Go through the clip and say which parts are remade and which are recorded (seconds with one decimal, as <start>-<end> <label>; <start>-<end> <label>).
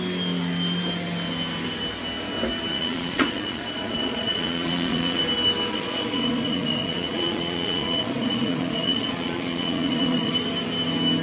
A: 0.0-2.7 recorded; 2.7-5.2 remade; 5.2-5.7 recorded; 5.7-10.3 remade; 10.3-11.2 recorded